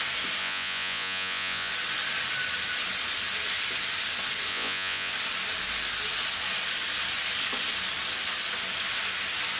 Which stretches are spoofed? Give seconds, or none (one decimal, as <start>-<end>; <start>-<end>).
0.4-1.7; 4.5-5.1